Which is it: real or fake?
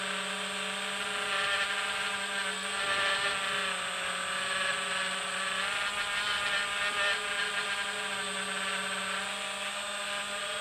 real